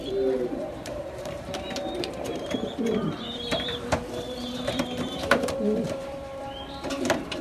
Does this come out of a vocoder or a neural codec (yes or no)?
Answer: yes